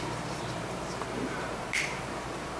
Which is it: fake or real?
fake